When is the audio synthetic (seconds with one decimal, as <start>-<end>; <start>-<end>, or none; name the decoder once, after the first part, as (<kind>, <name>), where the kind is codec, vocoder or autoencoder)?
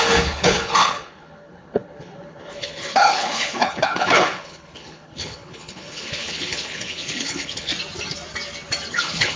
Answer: 0.0-7.7 (codec, HILCodec); 8.9-9.4